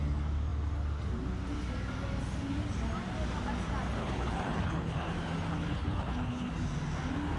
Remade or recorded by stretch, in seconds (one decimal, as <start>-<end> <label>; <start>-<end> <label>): 0.0-4.0 recorded; 4.0-5.1 remade; 5.1-5.5 recorded; 5.5-6.5 remade; 6.5-7.4 recorded